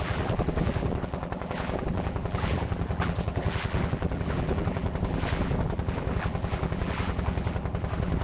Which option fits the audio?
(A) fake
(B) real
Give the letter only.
A